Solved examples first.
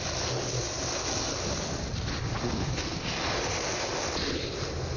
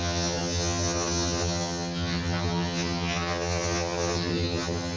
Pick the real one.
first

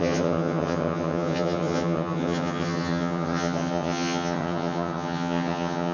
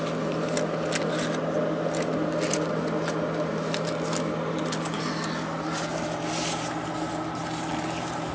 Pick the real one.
second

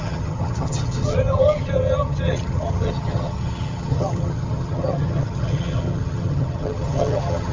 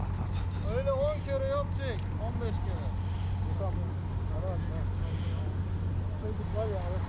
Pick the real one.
second